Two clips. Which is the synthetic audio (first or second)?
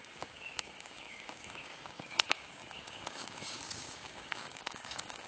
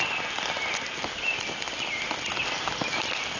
first